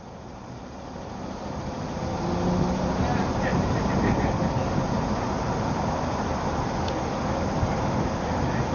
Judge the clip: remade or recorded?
recorded